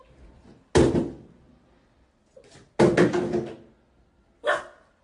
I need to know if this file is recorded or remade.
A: recorded